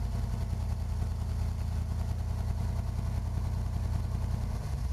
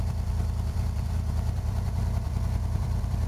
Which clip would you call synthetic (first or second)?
second